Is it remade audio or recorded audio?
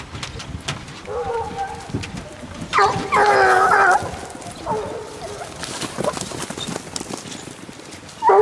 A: recorded